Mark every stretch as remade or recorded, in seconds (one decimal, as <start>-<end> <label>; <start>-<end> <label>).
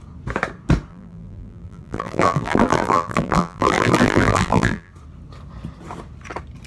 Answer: 0.0-0.9 recorded; 0.9-4.9 remade; 4.9-6.7 recorded